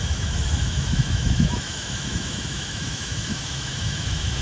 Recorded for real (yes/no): no